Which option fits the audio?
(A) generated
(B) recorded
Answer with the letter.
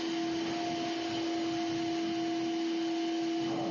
B